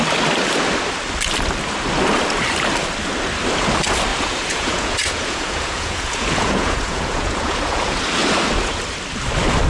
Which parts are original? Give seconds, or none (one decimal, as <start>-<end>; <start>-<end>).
0.0-4.1; 8.0-9.7